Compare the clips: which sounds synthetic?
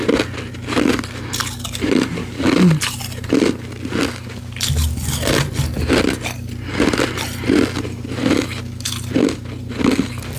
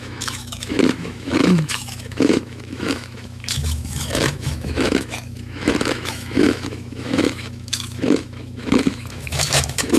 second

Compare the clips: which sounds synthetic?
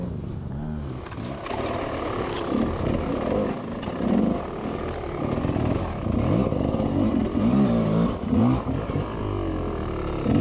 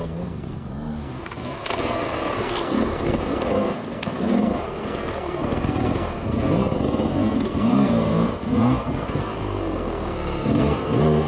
second